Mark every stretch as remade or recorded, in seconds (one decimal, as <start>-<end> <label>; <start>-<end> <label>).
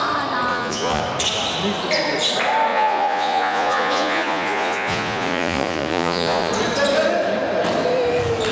0.0-0.5 recorded; 0.5-1.0 remade; 1.0-2.7 recorded; 2.7-6.5 remade; 6.5-8.5 recorded